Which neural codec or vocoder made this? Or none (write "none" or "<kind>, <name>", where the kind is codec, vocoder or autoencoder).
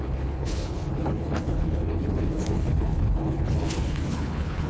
codec, HILCodec